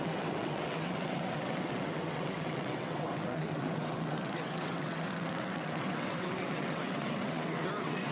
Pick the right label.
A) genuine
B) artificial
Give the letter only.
B